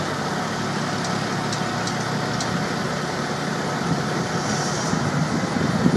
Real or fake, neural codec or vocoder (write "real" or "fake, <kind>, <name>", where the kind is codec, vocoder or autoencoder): real